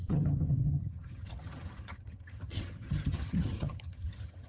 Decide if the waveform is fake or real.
fake